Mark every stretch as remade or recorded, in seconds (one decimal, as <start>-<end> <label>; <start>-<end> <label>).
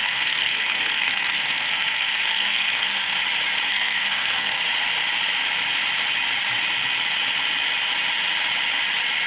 0.0-3.2 remade; 3.2-3.7 recorded; 3.7-4.6 remade; 4.6-9.3 recorded